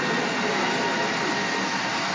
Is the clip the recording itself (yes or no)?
yes